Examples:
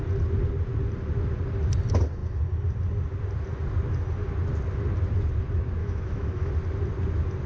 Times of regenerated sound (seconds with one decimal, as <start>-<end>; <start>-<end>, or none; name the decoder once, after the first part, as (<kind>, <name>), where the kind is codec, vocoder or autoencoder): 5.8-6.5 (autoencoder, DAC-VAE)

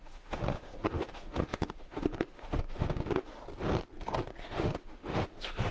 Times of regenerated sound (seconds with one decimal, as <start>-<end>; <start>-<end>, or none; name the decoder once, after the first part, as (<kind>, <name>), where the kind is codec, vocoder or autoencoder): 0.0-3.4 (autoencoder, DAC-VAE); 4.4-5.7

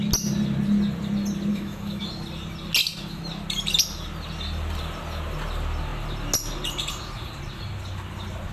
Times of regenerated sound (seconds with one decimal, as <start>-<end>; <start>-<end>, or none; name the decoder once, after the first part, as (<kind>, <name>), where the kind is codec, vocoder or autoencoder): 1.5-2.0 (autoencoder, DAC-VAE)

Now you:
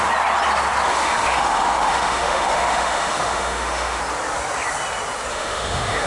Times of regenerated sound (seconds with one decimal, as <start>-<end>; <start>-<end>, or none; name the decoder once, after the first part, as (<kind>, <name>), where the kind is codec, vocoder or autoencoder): 0.9-4.0 (autoencoder, DAC-VAE); 5.3-6.1

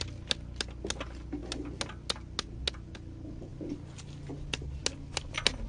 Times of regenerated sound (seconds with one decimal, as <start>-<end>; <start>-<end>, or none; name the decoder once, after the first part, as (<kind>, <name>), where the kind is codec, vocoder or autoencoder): none

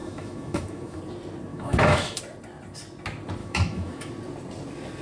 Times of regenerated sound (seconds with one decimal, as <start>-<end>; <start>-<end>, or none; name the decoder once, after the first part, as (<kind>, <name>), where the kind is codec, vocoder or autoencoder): 0.0-1.0 (autoencoder, DAC-VAE); 1.5-2.2; 3.4-4.1

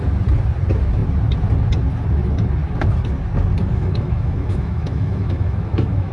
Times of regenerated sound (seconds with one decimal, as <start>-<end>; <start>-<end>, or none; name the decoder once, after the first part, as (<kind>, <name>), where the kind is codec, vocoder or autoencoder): 3.6-6.1 (autoencoder, DAC-VAE)